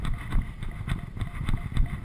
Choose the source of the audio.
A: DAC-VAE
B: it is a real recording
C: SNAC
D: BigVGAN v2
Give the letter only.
B